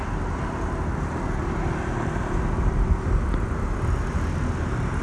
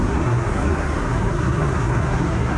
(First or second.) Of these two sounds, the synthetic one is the second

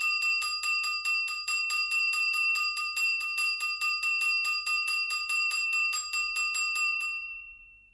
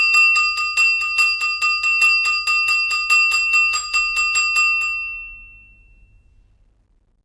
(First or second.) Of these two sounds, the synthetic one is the first